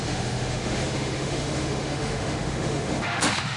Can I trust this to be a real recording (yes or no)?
no